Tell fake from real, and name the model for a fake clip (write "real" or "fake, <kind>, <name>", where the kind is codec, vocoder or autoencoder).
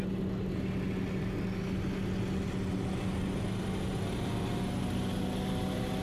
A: real